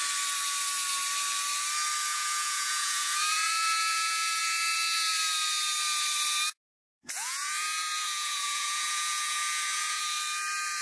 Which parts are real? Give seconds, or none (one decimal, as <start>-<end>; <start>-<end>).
0.0-2.1; 4.4-6.8; 10.0-10.8